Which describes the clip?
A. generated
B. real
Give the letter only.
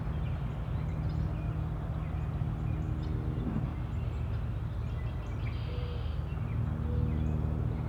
B